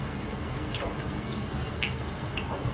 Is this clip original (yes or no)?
no